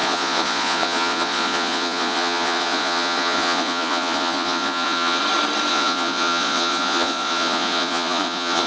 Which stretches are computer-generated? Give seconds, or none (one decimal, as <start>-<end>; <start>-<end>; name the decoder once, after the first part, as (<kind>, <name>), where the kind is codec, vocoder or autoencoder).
0.0-5.2 (vocoder, Vocos); 5.7-8.7